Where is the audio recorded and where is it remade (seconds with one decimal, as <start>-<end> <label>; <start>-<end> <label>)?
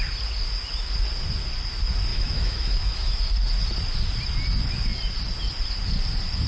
0.0-2.1 recorded; 2.1-3.2 remade; 3.2-6.5 recorded